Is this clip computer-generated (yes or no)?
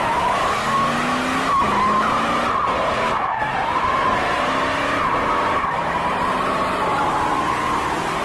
no